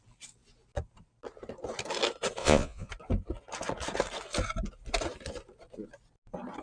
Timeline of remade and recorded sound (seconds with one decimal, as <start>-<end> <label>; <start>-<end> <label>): 0.0-2.4 recorded; 2.4-2.9 remade; 2.9-6.6 recorded